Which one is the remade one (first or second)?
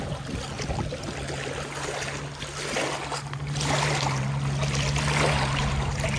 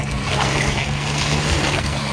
second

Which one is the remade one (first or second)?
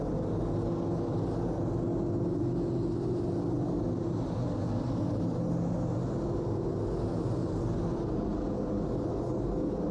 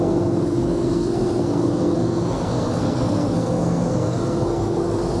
second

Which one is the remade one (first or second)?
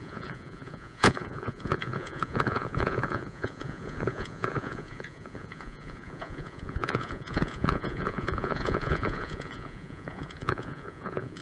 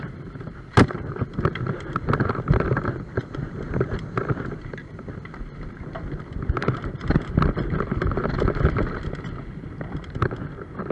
first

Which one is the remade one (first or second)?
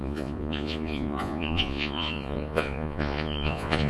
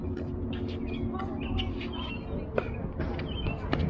first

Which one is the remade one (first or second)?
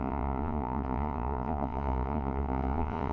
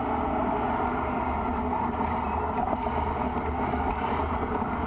first